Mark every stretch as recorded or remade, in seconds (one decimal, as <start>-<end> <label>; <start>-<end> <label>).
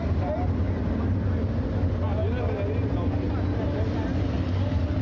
0.0-5.0 recorded